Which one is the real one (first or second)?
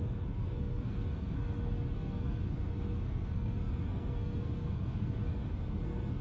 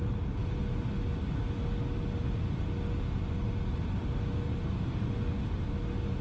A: second